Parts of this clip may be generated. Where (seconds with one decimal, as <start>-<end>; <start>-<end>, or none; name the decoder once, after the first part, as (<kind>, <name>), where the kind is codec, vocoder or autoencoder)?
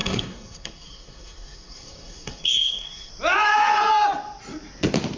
0.0-3.1 (codec, SNAC)